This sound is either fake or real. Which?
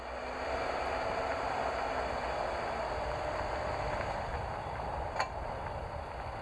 real